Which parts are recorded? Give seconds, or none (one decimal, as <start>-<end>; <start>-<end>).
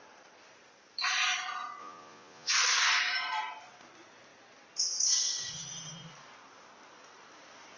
0.0-1.8; 2.5-7.8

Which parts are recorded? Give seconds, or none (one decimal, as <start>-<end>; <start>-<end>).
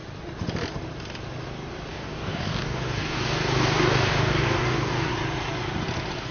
0.0-1.9; 5.1-6.3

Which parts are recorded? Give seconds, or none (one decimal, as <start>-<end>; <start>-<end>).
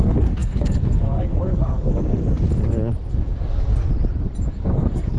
2.2-3.1; 3.9-4.5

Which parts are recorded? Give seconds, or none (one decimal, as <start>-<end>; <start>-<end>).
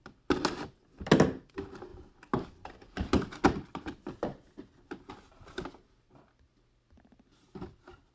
0.0-8.1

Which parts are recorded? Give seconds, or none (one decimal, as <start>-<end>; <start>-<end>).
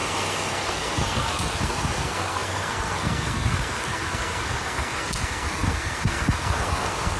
none